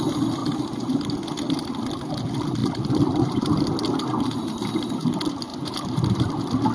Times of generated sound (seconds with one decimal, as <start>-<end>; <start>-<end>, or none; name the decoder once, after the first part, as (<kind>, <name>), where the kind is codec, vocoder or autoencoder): 5.5-6.2 (vocoder, BigVGAN v2)